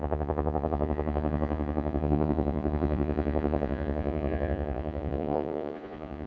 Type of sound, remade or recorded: remade